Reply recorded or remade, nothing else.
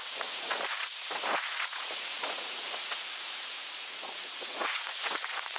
remade